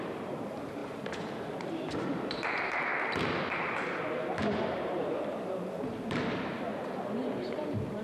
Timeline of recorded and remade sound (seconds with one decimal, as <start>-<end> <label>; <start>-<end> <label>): 0.0-2.9 remade; 2.9-3.4 recorded; 3.4-6.7 remade; 6.7-7.3 recorded; 7.3-8.0 remade